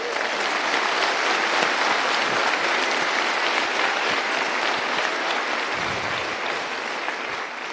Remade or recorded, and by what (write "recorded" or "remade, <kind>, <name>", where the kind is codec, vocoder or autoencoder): recorded